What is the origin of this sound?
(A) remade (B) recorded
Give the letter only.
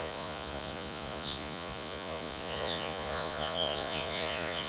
A